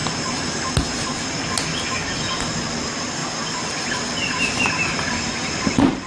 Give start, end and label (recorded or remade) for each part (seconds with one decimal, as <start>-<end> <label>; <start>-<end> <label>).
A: 0.0-2.1 recorded; 2.1-3.2 remade; 3.2-5.5 recorded; 5.5-6.1 remade